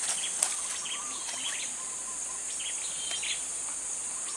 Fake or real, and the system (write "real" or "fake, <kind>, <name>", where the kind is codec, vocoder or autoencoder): real